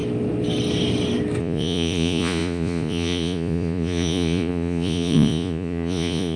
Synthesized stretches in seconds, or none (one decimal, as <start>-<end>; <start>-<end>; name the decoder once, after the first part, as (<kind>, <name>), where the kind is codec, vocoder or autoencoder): 1.4-6.4 (vocoder, Vocos)